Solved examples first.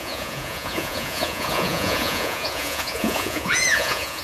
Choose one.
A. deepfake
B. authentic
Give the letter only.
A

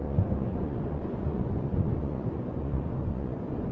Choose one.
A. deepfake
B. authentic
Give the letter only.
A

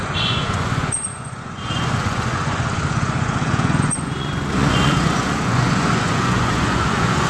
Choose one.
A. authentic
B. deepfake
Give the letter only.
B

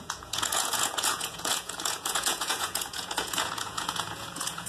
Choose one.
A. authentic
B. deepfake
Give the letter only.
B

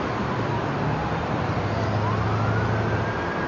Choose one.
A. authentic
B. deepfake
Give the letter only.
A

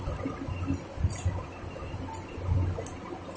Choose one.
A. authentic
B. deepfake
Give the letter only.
A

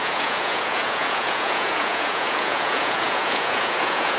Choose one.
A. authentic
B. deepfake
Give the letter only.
B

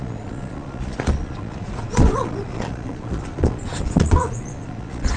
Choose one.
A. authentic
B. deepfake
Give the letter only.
B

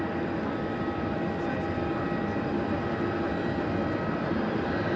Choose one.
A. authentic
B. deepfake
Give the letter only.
A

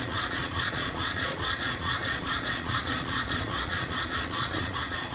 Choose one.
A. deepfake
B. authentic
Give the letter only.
A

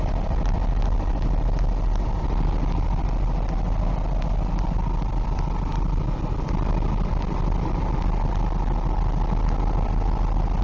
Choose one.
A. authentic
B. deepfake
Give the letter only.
A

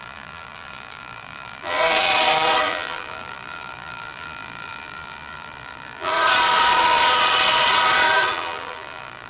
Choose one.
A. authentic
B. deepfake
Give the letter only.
B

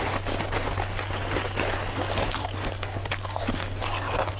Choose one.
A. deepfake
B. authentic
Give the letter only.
B